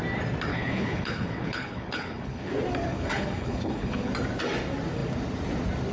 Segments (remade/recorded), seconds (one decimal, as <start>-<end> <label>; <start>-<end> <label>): 0.0-0.5 recorded; 0.5-2.5 remade; 2.5-2.9 recorded; 2.9-4.1 remade; 4.1-5.9 recorded